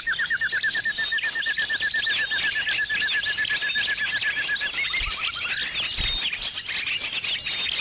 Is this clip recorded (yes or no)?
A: yes